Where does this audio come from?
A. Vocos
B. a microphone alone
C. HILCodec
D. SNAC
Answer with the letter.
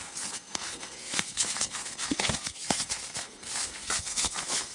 D